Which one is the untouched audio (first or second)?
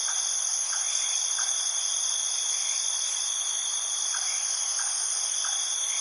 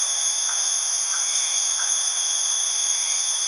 first